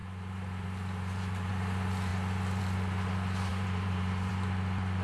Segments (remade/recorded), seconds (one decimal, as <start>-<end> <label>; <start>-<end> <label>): 0.0-1.5 remade; 1.5-3.5 recorded; 3.5-4.3 remade; 4.3-5.0 recorded